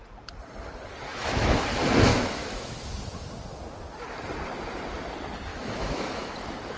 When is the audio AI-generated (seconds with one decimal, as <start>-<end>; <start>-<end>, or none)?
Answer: 1.1-1.6; 2.1-2.8; 5.5-6.3